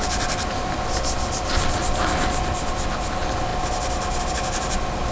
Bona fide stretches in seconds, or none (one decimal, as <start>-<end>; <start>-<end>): 0.0-5.1